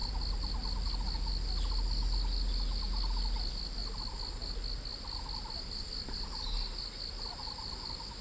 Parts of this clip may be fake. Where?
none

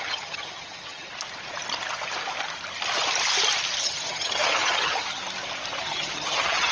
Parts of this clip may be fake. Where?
0.0-1.1 (vocoder, HiFi-GAN); 3.8-5.2; 5.8-6.7